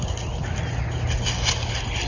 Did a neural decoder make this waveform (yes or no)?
no